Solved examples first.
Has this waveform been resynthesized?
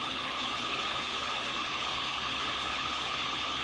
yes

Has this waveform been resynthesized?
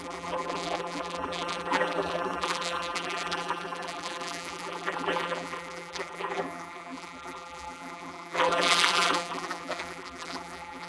yes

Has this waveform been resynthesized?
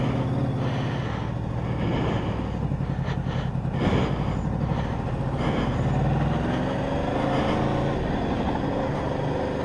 no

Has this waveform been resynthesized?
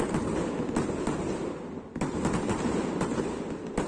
no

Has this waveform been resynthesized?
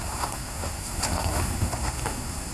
yes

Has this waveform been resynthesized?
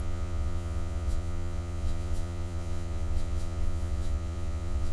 yes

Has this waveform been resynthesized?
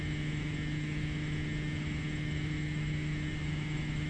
yes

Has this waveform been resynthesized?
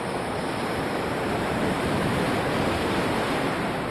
yes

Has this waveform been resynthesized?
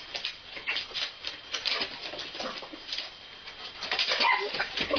no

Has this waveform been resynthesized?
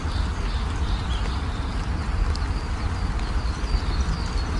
no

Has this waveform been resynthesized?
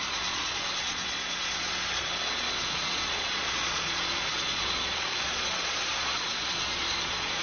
yes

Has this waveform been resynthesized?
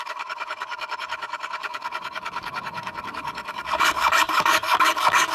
yes